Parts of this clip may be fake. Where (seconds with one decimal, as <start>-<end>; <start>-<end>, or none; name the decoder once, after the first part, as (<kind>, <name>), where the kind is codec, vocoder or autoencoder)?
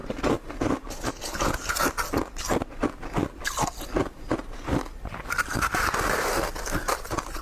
0.0-1.1 (vocoder, BigVGAN v2)